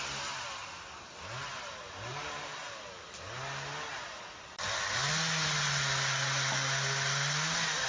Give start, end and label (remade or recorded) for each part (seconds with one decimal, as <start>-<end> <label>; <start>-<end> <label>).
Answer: 0.0-7.9 recorded